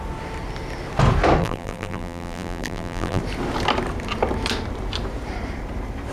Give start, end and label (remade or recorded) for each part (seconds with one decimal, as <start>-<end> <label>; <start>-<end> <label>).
0.0-1.4 recorded; 1.4-3.2 remade; 3.2-6.1 recorded